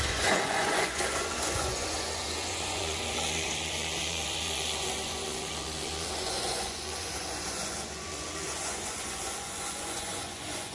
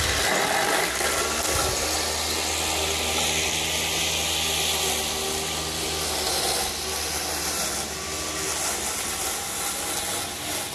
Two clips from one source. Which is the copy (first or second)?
first